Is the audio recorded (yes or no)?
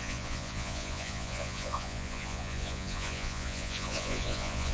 no